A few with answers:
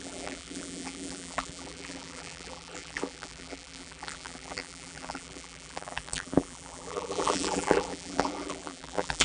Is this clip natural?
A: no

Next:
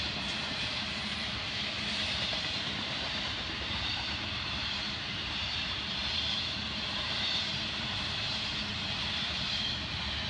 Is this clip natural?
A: no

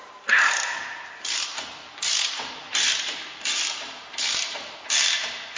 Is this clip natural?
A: no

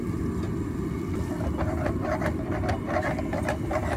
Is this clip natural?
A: yes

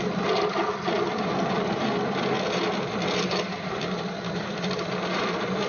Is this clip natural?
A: no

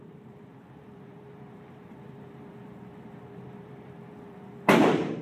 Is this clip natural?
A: no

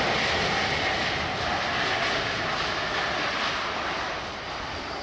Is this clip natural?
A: yes